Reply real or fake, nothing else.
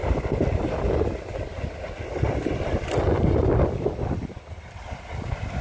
real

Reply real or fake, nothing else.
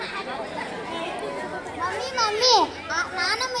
real